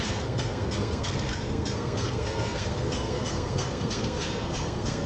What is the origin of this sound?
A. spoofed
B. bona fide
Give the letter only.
A